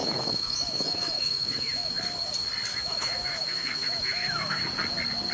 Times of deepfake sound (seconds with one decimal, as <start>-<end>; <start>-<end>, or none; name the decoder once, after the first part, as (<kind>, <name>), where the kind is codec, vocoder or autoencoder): 0.0-1.9 (autoencoder, DAC-VAE); 2.7-4.6